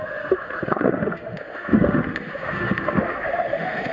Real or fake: fake